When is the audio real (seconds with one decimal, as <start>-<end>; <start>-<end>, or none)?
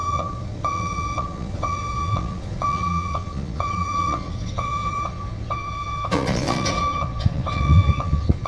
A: none